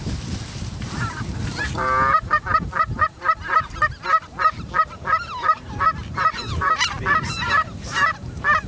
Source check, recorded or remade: remade